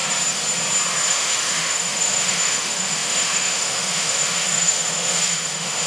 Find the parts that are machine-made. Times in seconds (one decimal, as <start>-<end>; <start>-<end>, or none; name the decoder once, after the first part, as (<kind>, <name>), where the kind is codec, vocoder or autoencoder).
1.1-5.9 (autoencoder, DAC-VAE)